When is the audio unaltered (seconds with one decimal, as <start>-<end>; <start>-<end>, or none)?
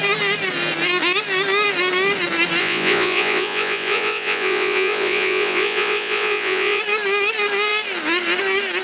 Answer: 0.0-2.6; 6.8-8.8